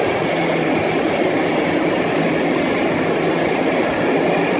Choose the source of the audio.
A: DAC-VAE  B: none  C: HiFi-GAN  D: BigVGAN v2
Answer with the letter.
B